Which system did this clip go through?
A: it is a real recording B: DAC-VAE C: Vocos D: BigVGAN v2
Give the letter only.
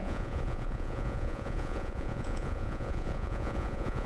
C